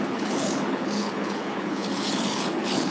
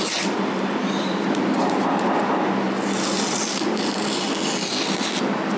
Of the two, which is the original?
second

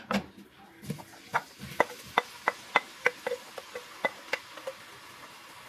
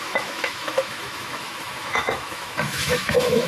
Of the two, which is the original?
first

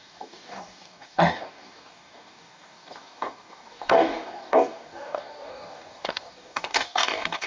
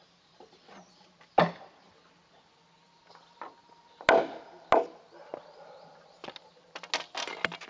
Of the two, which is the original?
second